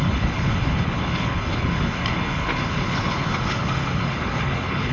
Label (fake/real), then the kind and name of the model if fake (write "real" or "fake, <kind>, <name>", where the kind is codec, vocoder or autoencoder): fake, codec, HILCodec